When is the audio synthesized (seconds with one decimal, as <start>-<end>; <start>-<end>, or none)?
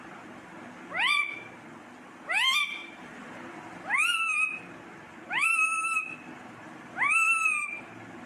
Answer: none